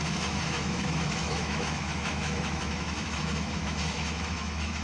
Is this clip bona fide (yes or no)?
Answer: no